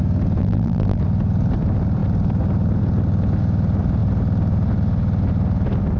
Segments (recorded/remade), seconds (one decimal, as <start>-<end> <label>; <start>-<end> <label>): 0.0-0.4 recorded; 0.4-1.0 remade; 1.0-6.0 recorded